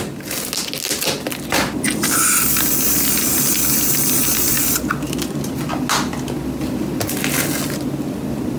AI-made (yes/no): no